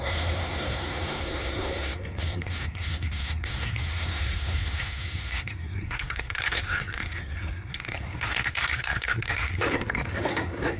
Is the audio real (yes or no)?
no